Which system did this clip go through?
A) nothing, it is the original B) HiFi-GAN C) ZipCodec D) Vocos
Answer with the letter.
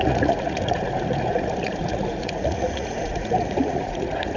D